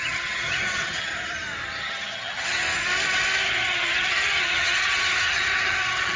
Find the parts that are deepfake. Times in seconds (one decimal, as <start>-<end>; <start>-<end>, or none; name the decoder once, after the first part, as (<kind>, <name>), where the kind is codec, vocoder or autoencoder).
0.0-1.1 (vocoder, HiFi-GAN); 1.8-2.6; 3.5-6.2

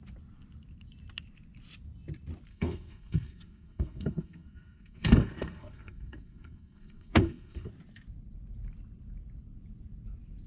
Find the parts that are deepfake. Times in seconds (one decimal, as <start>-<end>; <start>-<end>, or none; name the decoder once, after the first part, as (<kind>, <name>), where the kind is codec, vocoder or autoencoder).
2.5-7.7 (codec, SNAC)

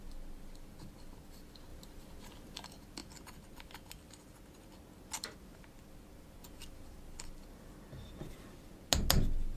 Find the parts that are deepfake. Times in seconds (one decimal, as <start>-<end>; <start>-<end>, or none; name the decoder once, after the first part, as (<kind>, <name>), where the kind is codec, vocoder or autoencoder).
none

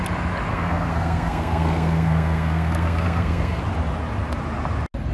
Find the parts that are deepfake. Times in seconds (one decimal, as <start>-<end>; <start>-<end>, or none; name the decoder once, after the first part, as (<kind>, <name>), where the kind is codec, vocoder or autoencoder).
0.5-3.6 (codec, SNAC)

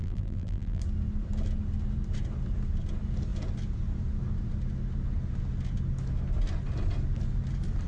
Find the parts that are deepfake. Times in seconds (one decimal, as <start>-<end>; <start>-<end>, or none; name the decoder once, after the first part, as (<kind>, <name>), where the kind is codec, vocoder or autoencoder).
0.0-0.8 (vocoder, BigVGAN v2)

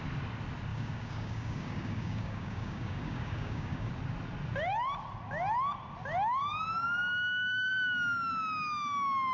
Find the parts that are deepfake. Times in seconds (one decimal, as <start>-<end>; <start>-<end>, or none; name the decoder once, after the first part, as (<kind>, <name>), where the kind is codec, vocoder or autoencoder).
0.7-3.9 (codec, DAC); 6.4-7.7

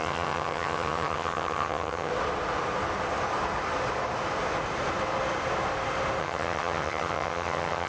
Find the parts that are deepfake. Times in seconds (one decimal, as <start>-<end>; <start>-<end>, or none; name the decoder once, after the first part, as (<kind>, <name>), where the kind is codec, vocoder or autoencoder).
0.0-2.1 (vocoder, HiFi-GAN); 6.2-7.9